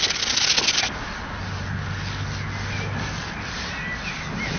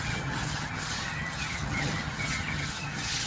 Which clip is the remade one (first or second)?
second